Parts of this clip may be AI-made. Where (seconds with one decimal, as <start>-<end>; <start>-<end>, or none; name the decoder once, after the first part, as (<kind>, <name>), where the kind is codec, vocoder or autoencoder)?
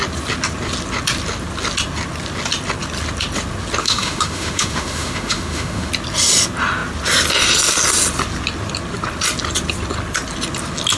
3.8-5.9 (autoencoder, DAC-VAE)